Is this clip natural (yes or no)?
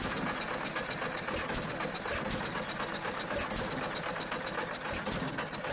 yes